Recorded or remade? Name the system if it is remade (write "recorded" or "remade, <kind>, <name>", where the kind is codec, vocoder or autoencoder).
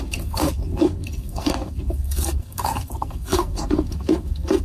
remade, codec, SNAC